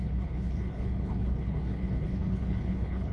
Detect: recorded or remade remade